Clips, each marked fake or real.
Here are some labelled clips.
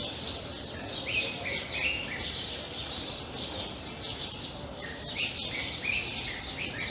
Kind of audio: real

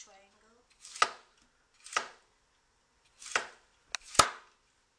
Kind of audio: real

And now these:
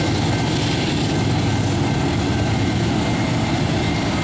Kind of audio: real